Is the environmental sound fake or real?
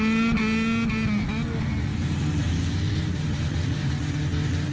real